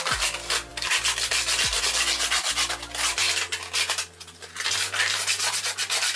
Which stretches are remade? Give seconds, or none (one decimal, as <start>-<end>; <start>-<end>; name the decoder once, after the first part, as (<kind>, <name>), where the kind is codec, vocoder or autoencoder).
none